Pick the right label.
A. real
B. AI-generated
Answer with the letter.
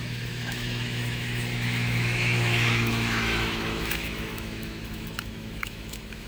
B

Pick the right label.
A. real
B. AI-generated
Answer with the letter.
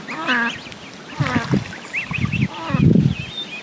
A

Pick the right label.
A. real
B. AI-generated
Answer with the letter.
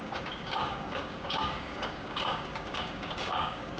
B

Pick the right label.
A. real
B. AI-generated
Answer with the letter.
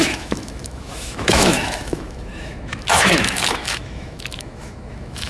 B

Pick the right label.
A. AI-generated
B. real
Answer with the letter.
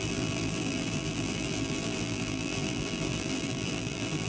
A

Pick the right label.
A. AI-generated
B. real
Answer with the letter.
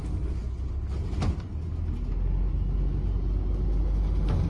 B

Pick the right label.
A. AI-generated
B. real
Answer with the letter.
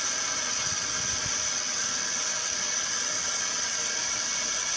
B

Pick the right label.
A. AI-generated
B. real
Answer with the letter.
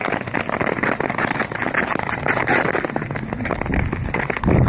B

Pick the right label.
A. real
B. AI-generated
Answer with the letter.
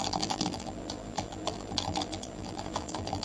B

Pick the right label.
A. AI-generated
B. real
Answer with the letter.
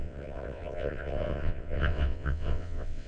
A